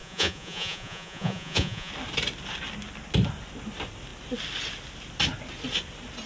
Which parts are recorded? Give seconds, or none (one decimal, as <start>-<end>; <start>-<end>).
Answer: 1.9-6.3